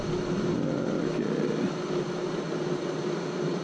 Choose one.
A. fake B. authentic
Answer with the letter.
B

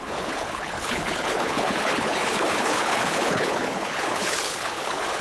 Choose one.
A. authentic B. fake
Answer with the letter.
B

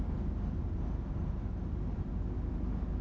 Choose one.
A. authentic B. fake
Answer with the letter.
A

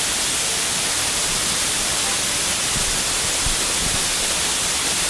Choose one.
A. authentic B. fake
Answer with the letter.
A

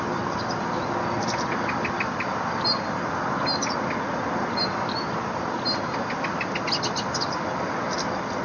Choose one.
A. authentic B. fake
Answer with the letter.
A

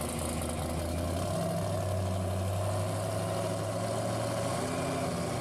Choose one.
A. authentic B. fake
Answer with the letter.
A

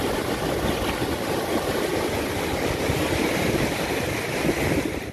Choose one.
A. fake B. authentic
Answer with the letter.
A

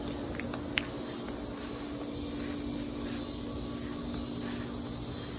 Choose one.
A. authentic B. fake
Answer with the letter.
A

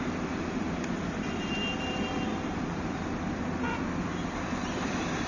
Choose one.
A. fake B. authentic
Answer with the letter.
A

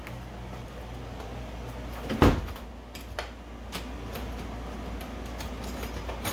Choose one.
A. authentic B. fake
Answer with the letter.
A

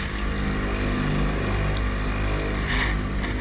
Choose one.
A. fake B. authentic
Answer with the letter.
B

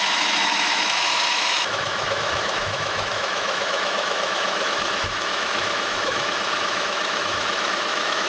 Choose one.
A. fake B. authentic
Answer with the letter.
A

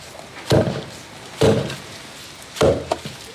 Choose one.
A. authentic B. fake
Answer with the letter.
A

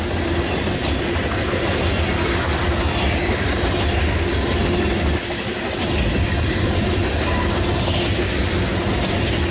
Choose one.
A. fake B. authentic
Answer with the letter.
B